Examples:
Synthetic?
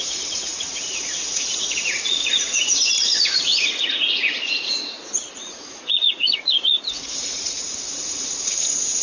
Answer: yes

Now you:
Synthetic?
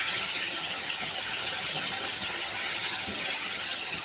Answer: yes